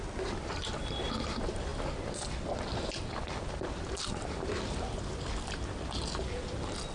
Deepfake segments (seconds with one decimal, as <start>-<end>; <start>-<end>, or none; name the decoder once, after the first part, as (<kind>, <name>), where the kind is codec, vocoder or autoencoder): 0.0-1.7 (vocoder, BigVGAN v2); 3.8-6.9

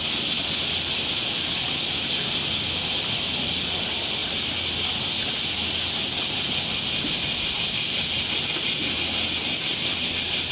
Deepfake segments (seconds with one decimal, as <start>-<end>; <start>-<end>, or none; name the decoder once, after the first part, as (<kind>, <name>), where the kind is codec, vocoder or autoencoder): none

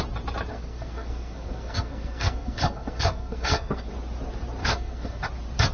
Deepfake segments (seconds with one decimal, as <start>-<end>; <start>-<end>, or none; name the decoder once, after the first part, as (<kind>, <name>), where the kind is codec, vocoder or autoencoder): 0.5-3.9 (codec, SNAC); 4.6-5.2

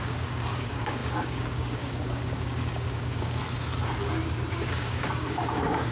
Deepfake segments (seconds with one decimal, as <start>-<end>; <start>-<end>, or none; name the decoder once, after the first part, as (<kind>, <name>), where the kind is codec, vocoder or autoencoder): 0.0-3.4 (codec, DAC); 4.5-5.9

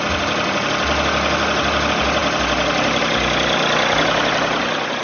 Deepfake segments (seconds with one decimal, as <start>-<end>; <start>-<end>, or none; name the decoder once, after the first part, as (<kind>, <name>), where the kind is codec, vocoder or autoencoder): none